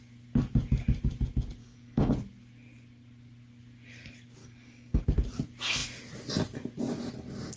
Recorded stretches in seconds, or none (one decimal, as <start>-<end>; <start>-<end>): 0.0-1.6; 2.1-4.4; 5.0-7.6